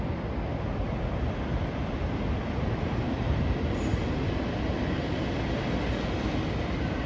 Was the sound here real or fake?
real